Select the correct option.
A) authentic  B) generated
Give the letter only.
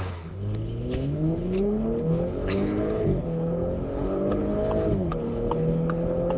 B